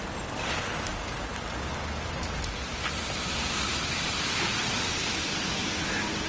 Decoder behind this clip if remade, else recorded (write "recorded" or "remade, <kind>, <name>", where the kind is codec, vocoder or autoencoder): recorded